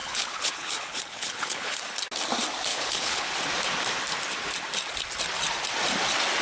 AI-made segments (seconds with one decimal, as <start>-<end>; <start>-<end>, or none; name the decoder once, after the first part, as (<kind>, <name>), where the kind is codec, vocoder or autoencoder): 0.0-1.8 (codec, HILCodec); 2.7-3.3